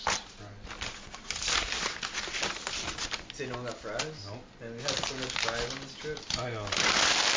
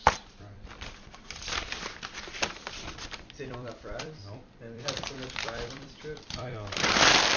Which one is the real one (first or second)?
first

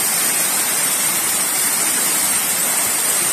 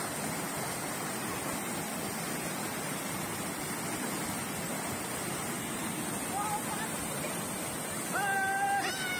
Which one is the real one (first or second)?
second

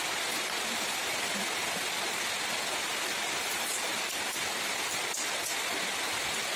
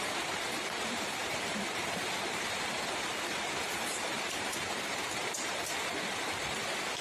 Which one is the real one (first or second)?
first